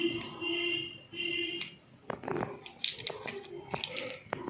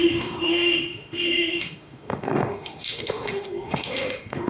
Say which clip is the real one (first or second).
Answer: first